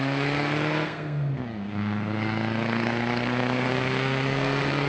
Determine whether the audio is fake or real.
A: fake